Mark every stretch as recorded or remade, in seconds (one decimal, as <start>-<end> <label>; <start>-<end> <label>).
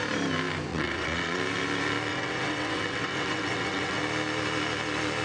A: 0.0-0.7 recorded; 0.7-1.4 remade; 1.4-2.1 recorded; 2.1-4.0 remade; 4.0-5.2 recorded